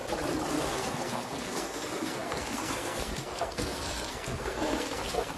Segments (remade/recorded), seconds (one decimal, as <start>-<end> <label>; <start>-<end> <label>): 0.0-0.5 recorded; 0.5-5.4 remade